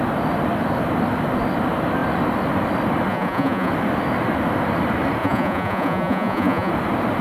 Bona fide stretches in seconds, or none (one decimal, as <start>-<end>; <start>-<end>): 0.0-3.1; 3.7-5.2; 6.7-7.2